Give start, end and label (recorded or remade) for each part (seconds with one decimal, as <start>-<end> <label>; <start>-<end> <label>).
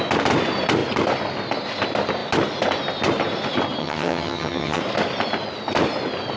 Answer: 0.0-3.8 recorded; 3.8-4.8 remade; 4.8-6.4 recorded